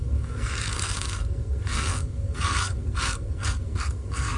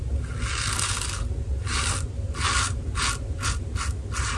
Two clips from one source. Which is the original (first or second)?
second